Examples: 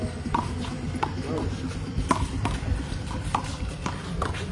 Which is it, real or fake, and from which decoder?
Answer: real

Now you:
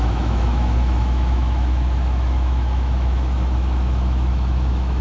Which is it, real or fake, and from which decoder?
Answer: fake, autoencoder, DAC-VAE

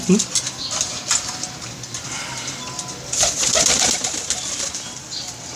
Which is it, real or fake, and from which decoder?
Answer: real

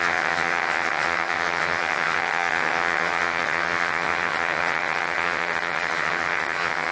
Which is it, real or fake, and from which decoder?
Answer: fake, vocoder, HiFi-GAN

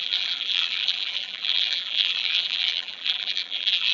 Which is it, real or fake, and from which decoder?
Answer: fake, vocoder, BigVGAN v2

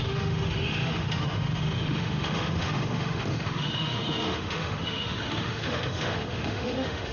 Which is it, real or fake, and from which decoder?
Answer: fake, autoencoder, DAC-VAE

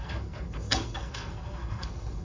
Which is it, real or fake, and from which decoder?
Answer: fake, codec, SNAC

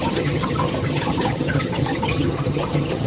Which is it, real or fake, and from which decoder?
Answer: fake, vocoder, HiFi-GAN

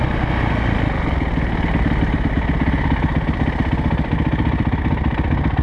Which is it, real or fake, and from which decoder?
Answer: real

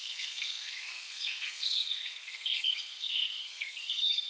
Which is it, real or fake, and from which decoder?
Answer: fake, codec, SNAC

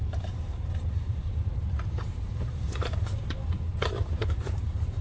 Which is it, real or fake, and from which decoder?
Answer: fake, vocoder, BigVGAN v2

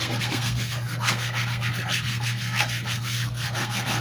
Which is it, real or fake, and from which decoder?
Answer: fake, codec, SNAC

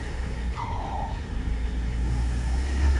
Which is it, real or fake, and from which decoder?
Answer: fake, codec, SNAC